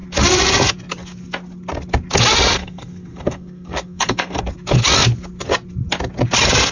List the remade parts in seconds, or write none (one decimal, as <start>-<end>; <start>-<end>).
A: 2.6-4.4